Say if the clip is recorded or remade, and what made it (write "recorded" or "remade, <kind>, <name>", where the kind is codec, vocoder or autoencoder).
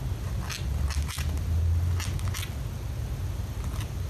recorded